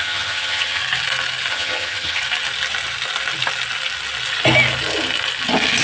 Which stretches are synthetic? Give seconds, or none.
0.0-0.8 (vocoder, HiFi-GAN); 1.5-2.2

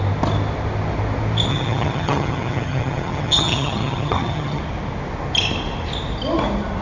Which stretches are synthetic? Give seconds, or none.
1.5-4.6 (vocoder, HiFi-GAN)

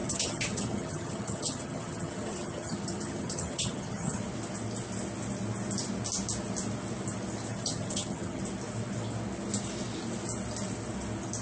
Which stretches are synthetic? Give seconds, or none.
0.0-4.2 (vocoder, HiFi-GAN); 7.5-8.4